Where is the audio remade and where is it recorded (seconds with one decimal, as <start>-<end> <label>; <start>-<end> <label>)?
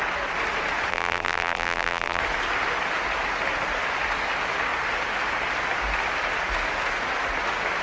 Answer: 0.0-0.9 recorded; 0.9-2.2 remade; 2.2-7.8 recorded